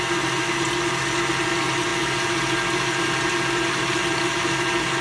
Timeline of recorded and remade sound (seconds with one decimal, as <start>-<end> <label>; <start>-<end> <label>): 0.0-5.0 recorded